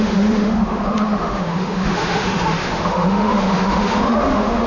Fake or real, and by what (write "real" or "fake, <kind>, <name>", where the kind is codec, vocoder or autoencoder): fake, autoencoder, DAC-VAE